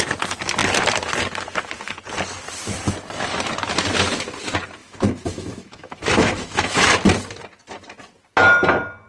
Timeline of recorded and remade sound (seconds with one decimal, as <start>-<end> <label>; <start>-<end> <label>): 0.0-4.8 recorded; 4.8-6.9 remade; 6.9-9.1 recorded